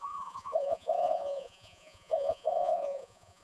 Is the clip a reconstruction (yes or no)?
yes